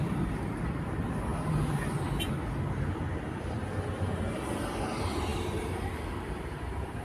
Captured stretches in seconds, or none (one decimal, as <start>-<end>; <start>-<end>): 1.3-4.8